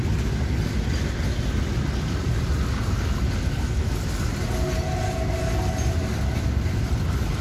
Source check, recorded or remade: recorded